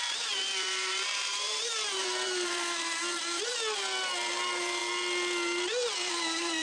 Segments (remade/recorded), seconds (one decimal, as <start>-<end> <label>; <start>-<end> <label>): 0.0-3.5 remade; 3.5-4.3 recorded; 4.3-4.8 remade; 4.8-6.1 recorded; 6.1-6.6 remade